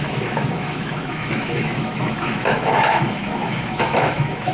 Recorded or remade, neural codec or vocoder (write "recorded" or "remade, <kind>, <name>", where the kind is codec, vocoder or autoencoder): remade, autoencoder, DAC-VAE